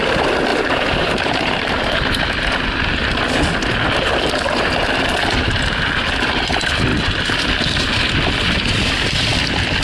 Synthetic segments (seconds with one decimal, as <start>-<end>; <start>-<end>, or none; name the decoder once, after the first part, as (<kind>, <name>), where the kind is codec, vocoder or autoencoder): 0.5-1.7 (vocoder, BigVGAN v2)